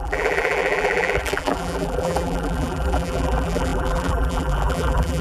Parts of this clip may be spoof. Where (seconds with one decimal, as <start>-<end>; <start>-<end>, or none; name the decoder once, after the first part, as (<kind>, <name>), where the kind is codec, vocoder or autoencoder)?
0.0-5.2 (vocoder, BigVGAN v2)

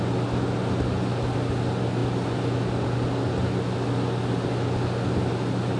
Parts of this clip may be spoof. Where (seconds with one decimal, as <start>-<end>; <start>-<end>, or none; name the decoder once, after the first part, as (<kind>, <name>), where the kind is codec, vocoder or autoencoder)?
none